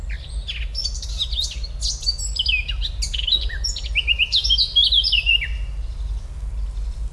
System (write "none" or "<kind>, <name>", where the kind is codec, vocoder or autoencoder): none